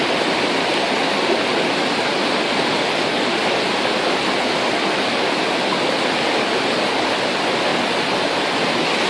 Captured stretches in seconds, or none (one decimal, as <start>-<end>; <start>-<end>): 0.0-9.1